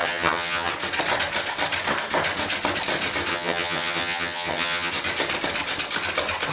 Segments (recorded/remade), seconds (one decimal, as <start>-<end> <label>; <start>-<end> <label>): 0.0-0.7 remade; 0.7-3.3 recorded; 3.3-4.9 remade; 4.9-6.5 recorded